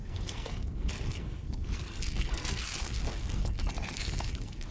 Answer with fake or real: fake